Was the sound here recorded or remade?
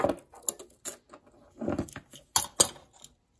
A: recorded